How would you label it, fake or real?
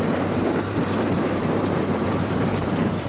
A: fake